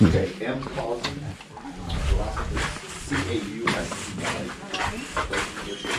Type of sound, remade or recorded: recorded